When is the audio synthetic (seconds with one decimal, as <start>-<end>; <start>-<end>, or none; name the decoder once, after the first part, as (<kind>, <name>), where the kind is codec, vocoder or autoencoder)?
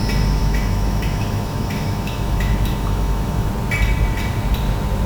0.4-3.5 (autoencoder, DAC-VAE)